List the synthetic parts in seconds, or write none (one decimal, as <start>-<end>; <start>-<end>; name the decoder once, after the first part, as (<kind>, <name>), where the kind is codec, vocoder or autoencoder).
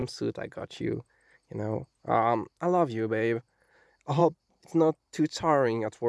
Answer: 3.7-6.1 (vocoder, BigVGAN v2)